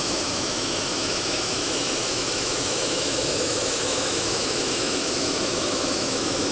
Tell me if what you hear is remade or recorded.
remade